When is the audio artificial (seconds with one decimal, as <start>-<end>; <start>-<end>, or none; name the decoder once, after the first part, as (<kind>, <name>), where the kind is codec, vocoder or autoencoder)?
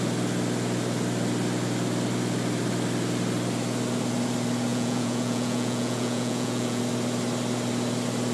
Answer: 4.7-6.8 (vocoder, Vocos)